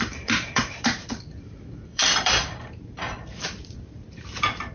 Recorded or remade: remade